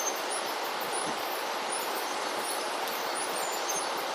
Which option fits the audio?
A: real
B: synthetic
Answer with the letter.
A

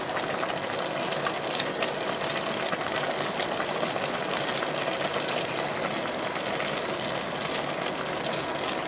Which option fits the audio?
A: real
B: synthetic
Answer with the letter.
A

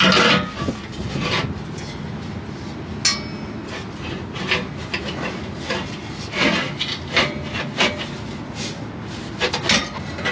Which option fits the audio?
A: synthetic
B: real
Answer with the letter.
B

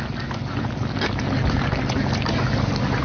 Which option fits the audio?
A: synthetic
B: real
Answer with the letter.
B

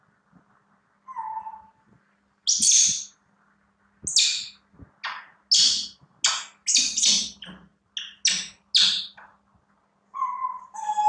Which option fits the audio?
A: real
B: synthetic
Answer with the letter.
A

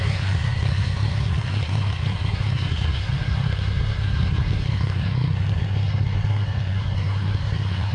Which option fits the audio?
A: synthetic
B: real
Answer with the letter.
A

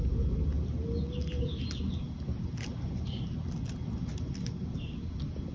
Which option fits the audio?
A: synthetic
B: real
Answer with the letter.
B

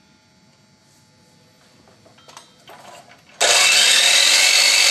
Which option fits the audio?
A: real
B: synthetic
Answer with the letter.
A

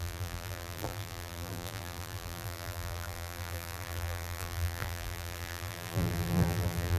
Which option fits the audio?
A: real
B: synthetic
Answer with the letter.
B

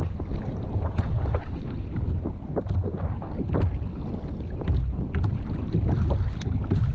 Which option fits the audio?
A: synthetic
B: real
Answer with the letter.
B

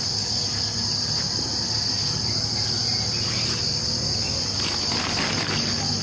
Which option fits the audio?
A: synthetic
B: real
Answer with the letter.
B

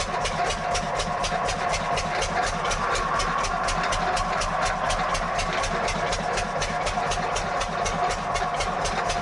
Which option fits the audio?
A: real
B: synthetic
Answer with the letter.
A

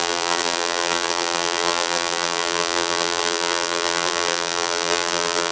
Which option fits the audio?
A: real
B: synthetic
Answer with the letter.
B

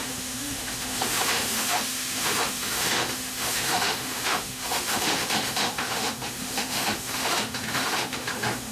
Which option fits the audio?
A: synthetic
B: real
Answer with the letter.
A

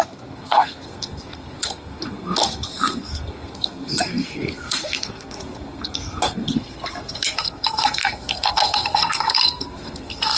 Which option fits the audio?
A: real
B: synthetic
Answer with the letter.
B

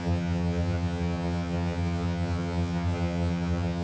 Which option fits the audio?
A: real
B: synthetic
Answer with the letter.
B